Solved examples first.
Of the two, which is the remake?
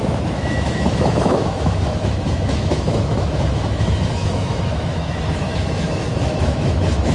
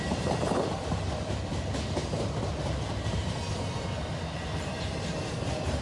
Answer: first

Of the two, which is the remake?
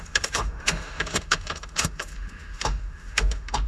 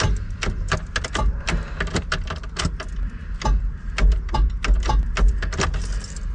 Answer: first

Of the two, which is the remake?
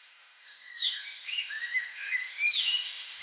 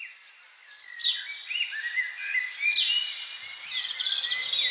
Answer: first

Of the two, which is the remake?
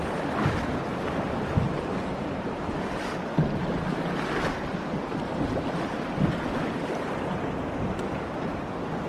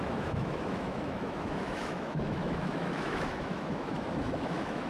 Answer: second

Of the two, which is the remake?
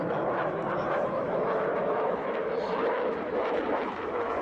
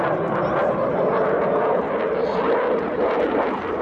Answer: first